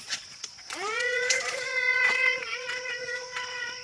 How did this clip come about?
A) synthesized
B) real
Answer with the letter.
A